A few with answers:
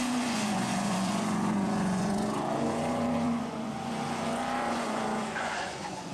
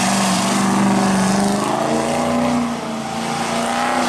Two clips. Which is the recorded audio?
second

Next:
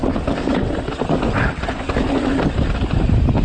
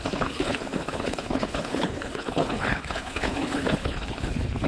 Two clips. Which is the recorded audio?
first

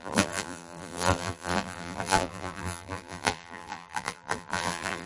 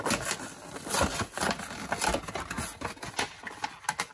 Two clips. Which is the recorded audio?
second